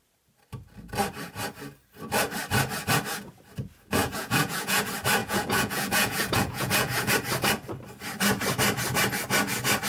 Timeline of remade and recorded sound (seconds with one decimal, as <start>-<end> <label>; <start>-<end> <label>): 0.0-4.0 recorded; 4.0-4.8 remade; 4.8-5.2 recorded; 5.2-7.1 remade; 7.1-9.9 recorded